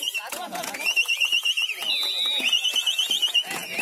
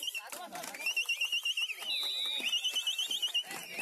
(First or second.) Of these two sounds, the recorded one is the second